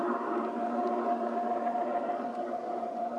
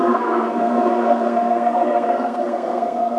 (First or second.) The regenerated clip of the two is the second